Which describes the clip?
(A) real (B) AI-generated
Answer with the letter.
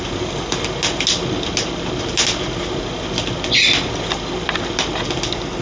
A